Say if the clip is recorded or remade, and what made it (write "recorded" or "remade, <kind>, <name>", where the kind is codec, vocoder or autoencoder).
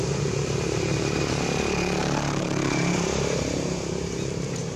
remade, vocoder, BigVGAN v2